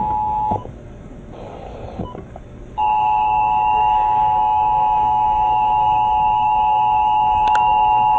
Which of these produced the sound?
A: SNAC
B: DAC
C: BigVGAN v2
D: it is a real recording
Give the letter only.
B